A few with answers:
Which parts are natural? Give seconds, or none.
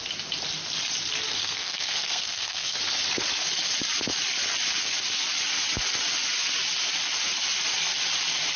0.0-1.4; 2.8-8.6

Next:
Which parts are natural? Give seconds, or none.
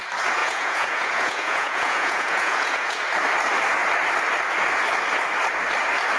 0.0-0.4; 3.0-6.2